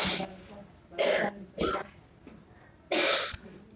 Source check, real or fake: real